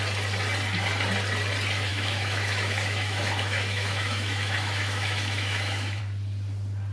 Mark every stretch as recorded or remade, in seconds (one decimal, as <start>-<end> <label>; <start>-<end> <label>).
0.0-1.9 recorded; 1.9-6.0 remade; 6.0-6.9 recorded